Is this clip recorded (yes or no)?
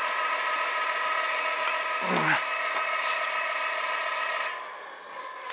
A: yes